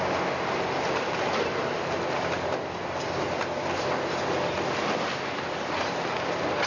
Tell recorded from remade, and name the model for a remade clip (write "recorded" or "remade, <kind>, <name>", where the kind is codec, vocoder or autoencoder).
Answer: recorded